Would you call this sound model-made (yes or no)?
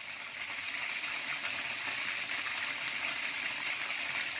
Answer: yes